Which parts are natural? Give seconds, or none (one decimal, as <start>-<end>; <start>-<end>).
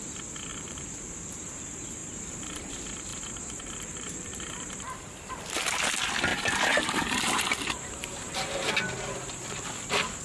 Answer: 0.0-0.5; 1.6-2.0; 2.7-3.1; 5.3-6.3; 8.7-10.2